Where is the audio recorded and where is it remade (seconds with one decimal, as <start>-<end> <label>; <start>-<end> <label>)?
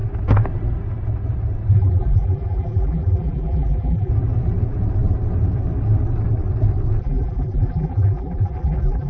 0.0-1.7 recorded; 1.7-4.1 remade; 4.1-7.0 recorded; 7.0-9.1 remade